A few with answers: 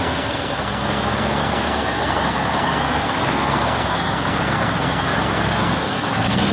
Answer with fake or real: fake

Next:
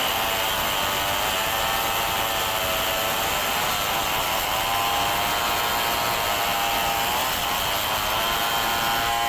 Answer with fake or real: real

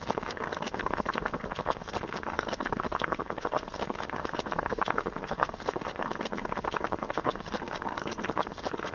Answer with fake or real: fake